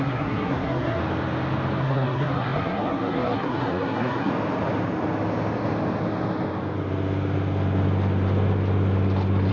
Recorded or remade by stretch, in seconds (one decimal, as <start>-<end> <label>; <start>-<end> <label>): 0.0-1.0 remade; 1.0-1.8 recorded; 1.8-4.3 remade; 4.3-9.5 recorded

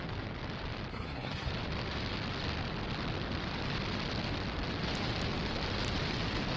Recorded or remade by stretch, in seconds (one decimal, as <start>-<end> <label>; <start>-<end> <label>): 0.0-0.9 recorded; 0.9-1.5 remade; 1.5-6.6 recorded

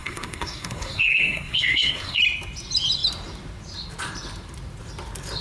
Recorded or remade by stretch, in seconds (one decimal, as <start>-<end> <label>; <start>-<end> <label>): 0.0-2.2 remade; 2.2-5.4 recorded

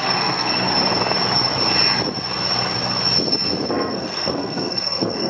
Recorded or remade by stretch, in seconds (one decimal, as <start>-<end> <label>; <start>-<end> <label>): 0.0-0.7 remade; 0.7-3.7 recorded; 3.7-5.3 remade